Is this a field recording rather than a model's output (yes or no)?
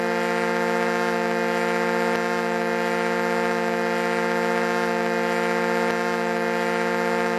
yes